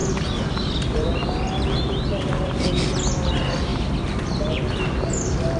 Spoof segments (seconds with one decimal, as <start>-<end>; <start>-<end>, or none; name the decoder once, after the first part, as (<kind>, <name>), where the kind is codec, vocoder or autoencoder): none